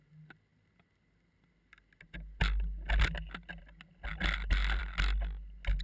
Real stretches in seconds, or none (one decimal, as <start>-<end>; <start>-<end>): 0.0-5.8

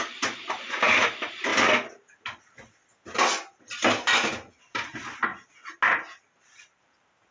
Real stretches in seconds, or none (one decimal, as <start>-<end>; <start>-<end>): 1.5-4.5; 5.3-6.6